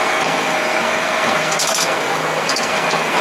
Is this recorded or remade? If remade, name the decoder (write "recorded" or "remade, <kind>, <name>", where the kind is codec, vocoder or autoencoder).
remade, codec, SNAC